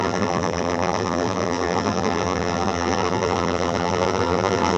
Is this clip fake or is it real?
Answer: fake